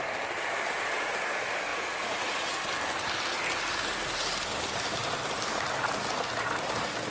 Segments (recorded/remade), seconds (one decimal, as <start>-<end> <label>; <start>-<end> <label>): 0.0-1.7 recorded; 1.7-2.5 remade; 2.5-7.1 recorded